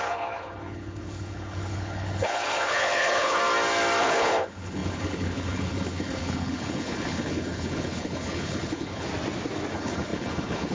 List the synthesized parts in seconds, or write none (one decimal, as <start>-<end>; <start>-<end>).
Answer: 0.0-3.4; 4.0-9.1; 9.7-10.7